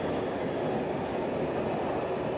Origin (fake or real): real